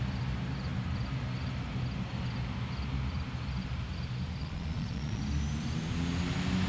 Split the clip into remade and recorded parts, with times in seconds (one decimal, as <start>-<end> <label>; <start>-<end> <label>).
0.0-4.4 recorded; 4.4-5.2 remade; 5.2-6.7 recorded